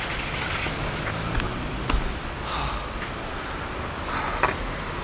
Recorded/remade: recorded